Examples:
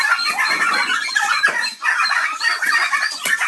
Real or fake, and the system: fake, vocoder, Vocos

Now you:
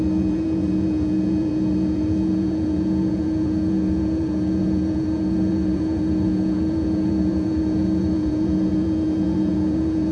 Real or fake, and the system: fake, vocoder, Vocos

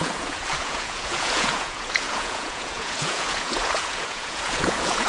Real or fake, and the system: fake, vocoder, Vocos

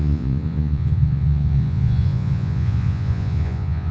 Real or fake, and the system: fake, vocoder, Vocos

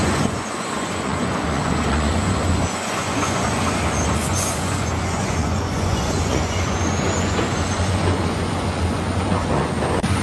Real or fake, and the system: fake, vocoder, Vocos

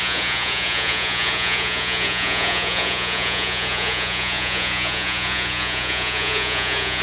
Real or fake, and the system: fake, vocoder, Vocos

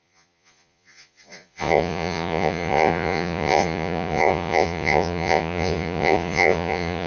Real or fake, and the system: fake, vocoder, Vocos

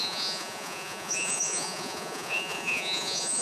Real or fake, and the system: fake, vocoder, Vocos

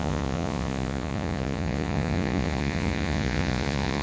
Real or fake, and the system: fake, vocoder, Vocos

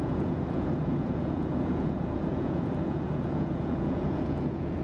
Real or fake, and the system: fake, vocoder, Vocos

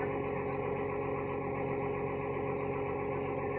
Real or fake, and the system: real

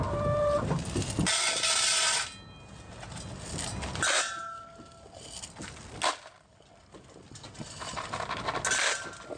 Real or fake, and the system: real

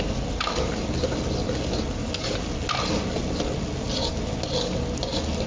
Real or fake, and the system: real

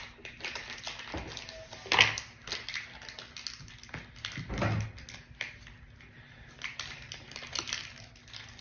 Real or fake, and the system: real